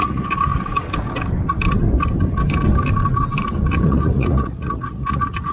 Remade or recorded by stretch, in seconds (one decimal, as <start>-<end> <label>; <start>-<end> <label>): 0.0-0.5 remade; 0.5-3.8 recorded; 3.8-5.5 remade